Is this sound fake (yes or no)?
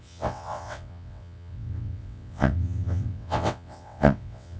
yes